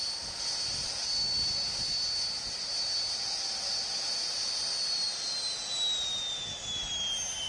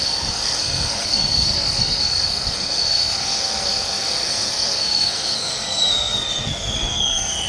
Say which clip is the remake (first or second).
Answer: second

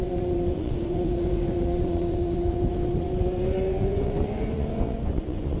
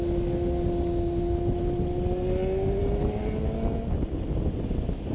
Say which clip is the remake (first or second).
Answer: first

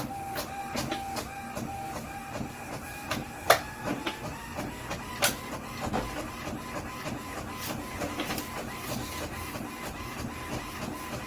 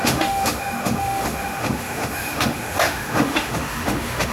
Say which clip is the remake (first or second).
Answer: second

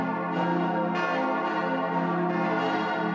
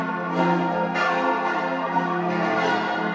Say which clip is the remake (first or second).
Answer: second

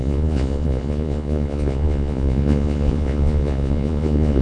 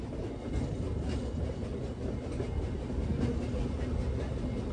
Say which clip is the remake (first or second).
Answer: first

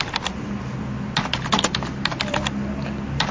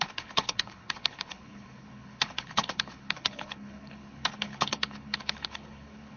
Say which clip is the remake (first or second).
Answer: second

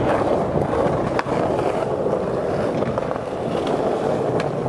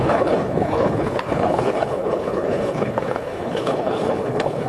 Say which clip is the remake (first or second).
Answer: second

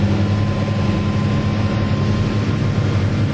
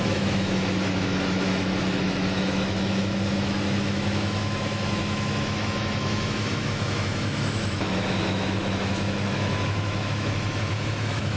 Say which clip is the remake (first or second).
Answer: second